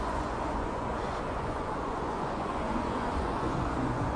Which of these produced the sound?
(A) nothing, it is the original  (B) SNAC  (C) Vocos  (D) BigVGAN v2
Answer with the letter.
C